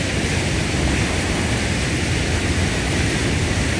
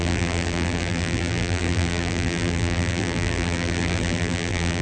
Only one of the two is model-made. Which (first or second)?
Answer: second